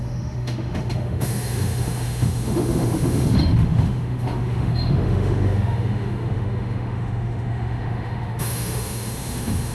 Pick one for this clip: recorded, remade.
remade